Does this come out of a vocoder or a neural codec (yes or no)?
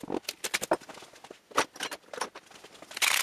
no